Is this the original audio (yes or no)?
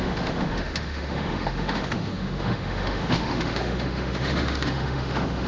no